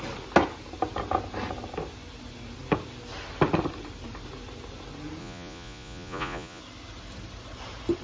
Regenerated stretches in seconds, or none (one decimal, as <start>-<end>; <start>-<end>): 5.2-6.6